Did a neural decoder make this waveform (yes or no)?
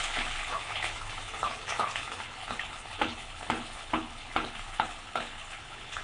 yes